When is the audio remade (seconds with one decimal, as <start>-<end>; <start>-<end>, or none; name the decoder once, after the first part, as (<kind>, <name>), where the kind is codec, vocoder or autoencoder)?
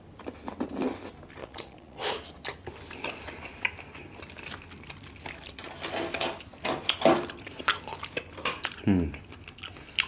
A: 1.4-2.0 (vocoder, Vocos)